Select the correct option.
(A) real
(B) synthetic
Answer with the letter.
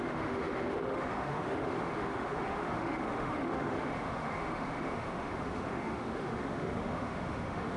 B